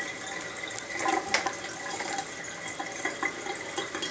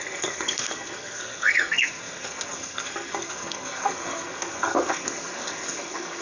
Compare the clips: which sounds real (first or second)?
first